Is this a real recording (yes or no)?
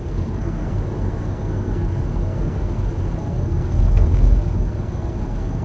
no